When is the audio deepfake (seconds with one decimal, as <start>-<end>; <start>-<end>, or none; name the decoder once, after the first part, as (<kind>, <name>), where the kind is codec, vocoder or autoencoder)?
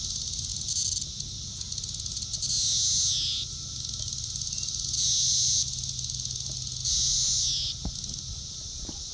none